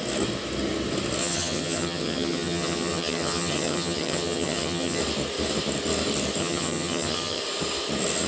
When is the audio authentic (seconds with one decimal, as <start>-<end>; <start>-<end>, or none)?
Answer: 0.0-1.2; 5.0-6.4; 7.4-8.3